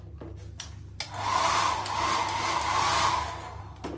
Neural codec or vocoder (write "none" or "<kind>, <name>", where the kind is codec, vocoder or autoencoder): none